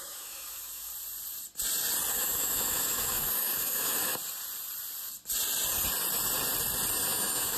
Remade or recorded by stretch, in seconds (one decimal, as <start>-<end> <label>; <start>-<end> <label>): 0.0-0.9 remade; 0.9-2.1 recorded; 2.1-4.1 remade; 4.1-7.1 recorded; 7.1-7.6 remade